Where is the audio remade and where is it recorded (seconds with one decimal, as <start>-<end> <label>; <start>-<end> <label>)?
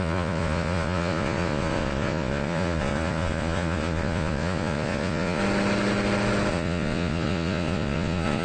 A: 0.0-5.4 remade; 5.4-6.5 recorded; 6.5-8.4 remade